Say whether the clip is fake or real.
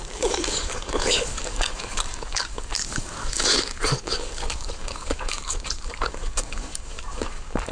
fake